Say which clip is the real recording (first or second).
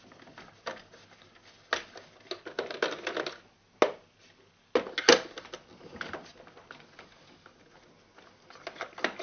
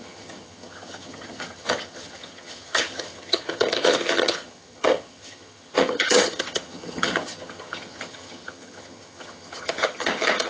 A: first